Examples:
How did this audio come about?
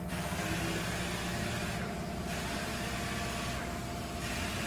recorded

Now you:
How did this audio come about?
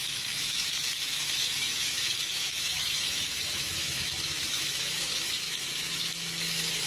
remade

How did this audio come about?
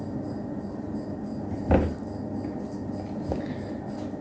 recorded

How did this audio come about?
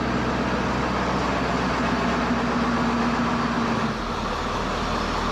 recorded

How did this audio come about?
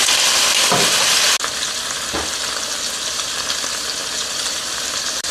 recorded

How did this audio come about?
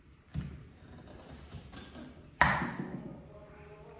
recorded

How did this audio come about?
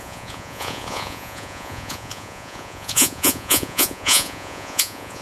remade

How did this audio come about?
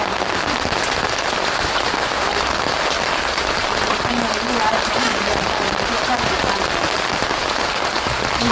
recorded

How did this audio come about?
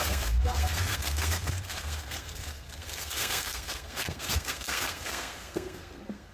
remade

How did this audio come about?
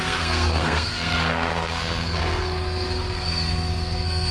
remade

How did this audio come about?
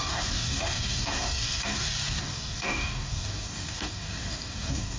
remade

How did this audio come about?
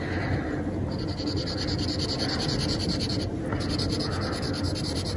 recorded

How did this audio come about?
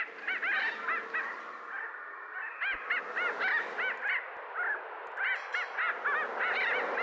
recorded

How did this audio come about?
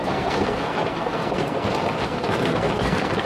remade